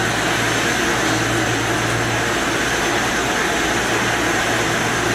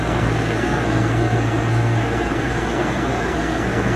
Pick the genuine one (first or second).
first